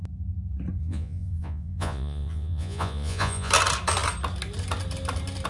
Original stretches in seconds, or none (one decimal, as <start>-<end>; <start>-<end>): 0.0-0.8; 3.5-5.5